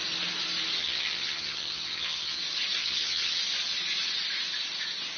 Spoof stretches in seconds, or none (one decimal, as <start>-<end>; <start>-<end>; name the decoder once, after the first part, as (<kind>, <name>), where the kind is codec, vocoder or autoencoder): 0.8-2.4 (vocoder, HiFi-GAN); 2.8-3.4